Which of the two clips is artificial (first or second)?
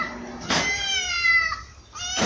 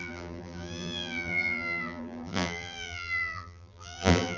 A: second